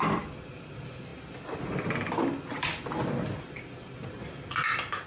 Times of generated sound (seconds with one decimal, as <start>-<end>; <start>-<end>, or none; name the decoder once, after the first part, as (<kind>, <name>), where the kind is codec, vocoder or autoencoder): none